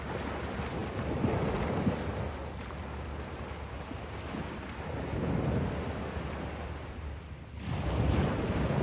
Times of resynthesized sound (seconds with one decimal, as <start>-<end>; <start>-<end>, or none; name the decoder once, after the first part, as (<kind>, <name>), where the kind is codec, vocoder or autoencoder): none